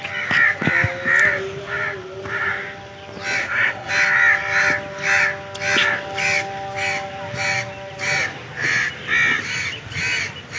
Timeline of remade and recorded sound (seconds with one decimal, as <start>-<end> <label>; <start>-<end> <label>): 0.0-3.4 recorded; 3.4-3.9 remade; 3.9-10.6 recorded

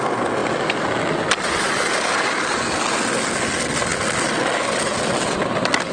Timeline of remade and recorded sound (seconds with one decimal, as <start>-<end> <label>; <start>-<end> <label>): 0.0-5.9 recorded

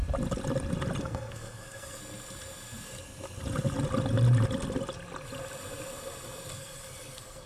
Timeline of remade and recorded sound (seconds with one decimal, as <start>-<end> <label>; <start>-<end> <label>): 0.0-1.0 recorded; 1.0-2.0 remade; 2.0-6.5 recorded; 6.5-7.5 remade

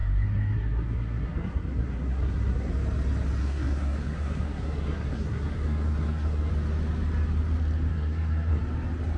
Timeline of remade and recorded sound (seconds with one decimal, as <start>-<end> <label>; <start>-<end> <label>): 0.0-2.7 remade; 2.7-3.4 recorded; 3.4-6.5 remade; 6.5-7.9 recorded; 7.9-8.6 remade; 8.6-9.2 recorded

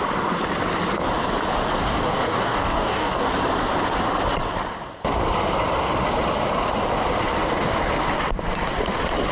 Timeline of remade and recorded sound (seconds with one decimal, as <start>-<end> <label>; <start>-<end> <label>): 0.0-1.8 recorded; 1.8-3.2 remade; 3.2-9.3 recorded

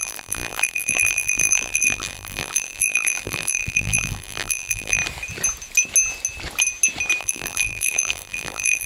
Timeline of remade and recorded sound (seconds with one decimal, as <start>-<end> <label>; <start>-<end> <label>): 0.0-5.0 remade; 5.0-7.2 recorded; 7.2-8.9 remade